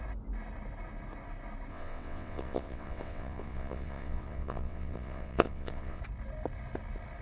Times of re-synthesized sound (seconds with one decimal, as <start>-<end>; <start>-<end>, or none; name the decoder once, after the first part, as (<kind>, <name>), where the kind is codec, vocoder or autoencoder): 1.7-6.0 (vocoder, WaveNeXt)